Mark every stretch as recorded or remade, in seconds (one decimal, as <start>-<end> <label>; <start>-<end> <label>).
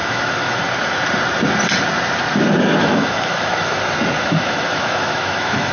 0.0-0.6 remade; 0.6-2.8 recorded; 2.8-3.8 remade; 3.8-4.2 recorded; 4.2-5.7 remade